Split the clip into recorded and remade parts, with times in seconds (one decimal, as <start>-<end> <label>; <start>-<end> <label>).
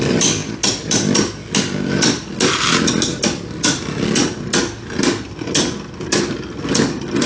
0.0-7.3 recorded